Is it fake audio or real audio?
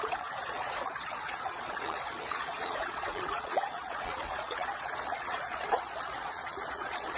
fake